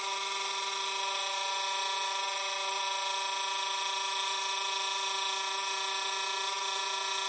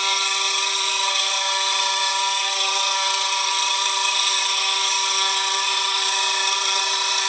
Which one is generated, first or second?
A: second